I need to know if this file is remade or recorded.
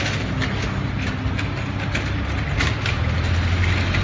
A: recorded